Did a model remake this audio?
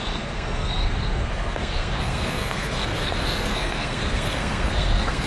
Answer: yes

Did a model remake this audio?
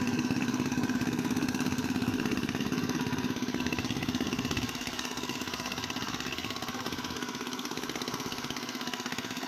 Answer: yes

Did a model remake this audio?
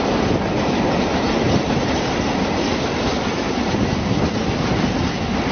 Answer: no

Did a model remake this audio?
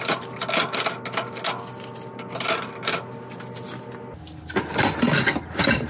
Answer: no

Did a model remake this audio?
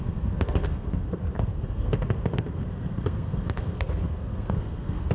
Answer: yes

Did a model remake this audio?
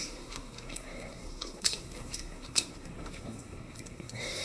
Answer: yes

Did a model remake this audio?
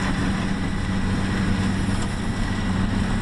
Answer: no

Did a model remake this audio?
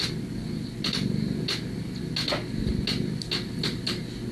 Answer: no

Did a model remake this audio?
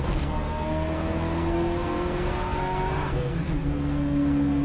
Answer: yes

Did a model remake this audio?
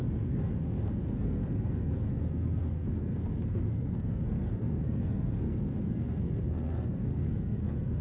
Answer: yes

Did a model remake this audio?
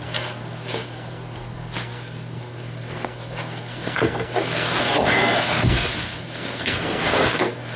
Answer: yes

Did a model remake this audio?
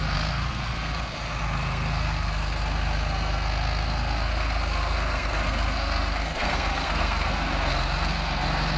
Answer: yes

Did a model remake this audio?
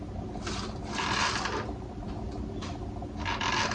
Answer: no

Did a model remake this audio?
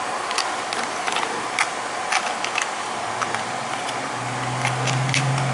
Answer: no